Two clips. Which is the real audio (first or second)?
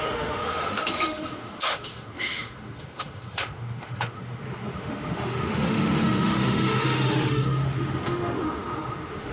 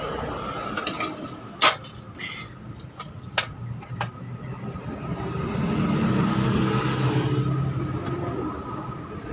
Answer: second